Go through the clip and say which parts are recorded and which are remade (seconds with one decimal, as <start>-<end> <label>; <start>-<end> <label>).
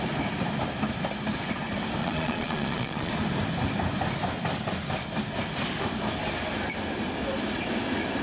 0.0-2.0 recorded; 2.0-3.1 remade; 3.1-8.2 recorded